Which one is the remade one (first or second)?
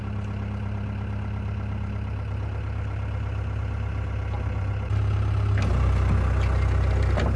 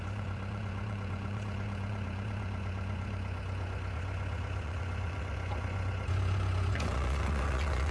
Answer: second